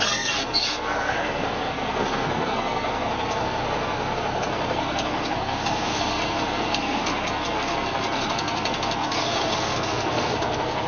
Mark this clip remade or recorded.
remade